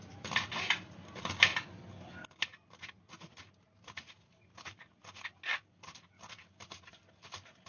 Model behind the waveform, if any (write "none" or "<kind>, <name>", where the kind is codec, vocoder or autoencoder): none